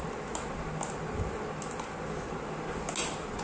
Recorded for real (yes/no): yes